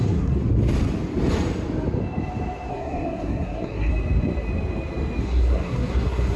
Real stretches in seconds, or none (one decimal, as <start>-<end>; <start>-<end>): 0.4-2.7; 3.9-5.2